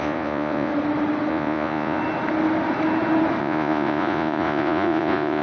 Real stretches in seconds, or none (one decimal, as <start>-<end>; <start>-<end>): 0.7-1.3; 2.0-3.4